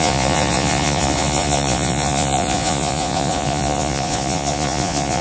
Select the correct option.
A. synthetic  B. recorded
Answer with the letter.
A